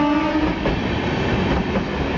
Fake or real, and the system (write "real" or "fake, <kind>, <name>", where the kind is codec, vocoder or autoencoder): real